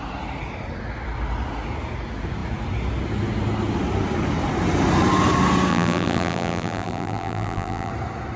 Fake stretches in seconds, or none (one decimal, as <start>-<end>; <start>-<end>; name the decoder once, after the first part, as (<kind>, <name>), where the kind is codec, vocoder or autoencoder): 5.7-7.9 (vocoder, BigVGAN v2)